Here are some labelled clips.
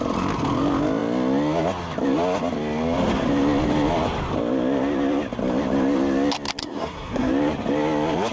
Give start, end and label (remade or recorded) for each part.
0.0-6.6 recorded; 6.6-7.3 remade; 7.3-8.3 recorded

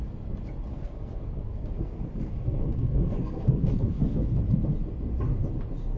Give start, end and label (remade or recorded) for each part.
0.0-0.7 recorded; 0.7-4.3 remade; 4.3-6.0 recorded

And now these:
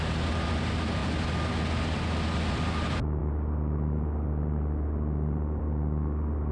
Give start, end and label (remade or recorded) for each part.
0.0-6.5 recorded

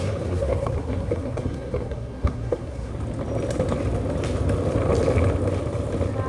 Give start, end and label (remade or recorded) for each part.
0.0-2.9 remade; 2.9-6.3 recorded

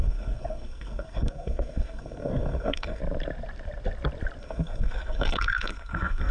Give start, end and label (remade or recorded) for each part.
0.0-3.0 remade; 3.0-4.4 recorded; 4.4-6.3 remade

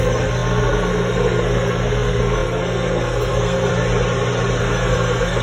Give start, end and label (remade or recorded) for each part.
0.0-3.7 remade; 3.7-4.6 recorded; 4.6-5.4 remade

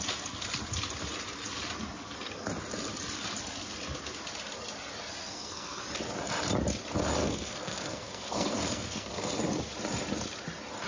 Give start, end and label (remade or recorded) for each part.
0.0-5.2 recorded; 5.2-5.8 remade; 5.8-7.2 recorded; 7.2-9.3 remade; 9.3-10.9 recorded